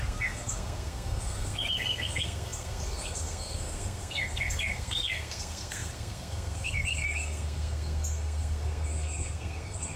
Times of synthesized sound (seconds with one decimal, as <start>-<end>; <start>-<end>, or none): 0.0-10.0